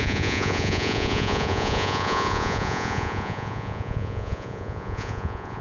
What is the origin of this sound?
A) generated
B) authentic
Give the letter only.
A